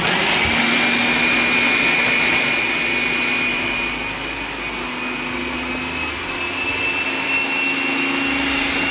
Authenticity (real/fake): real